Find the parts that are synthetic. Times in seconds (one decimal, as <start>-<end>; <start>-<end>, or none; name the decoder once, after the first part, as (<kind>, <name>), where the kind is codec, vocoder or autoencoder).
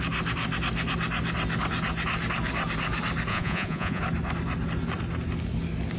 3.3-4.0 (vocoder, Vocos)